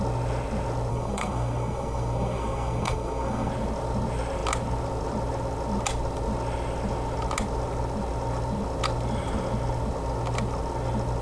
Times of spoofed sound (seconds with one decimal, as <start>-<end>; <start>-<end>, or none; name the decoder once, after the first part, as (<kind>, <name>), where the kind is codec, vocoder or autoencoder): 0.9-3.5 (codec, SNAC)